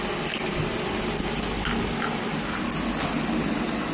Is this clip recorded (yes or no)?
yes